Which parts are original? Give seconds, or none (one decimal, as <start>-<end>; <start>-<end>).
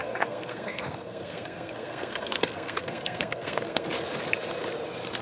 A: 3.9-5.2